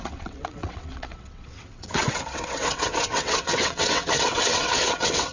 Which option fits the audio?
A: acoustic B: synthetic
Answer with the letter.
B